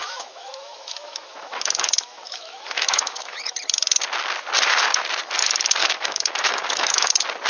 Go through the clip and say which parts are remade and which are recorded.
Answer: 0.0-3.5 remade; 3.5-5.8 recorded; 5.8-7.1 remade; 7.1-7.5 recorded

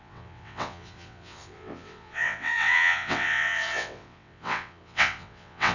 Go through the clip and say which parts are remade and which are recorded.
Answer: 0.0-5.7 remade

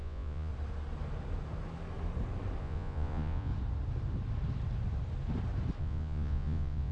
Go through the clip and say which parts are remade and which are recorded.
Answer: 0.0-0.5 remade; 0.5-2.6 recorded; 2.6-3.5 remade; 3.5-5.8 recorded; 5.8-6.9 remade

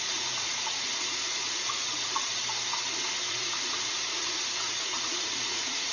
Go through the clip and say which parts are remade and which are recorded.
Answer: 0.0-2.4 remade; 2.4-3.3 recorded; 3.3-5.9 remade